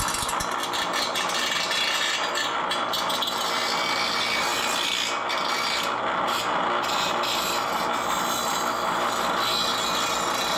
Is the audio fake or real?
real